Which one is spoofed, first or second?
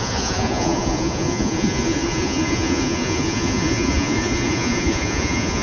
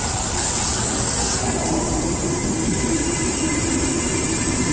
first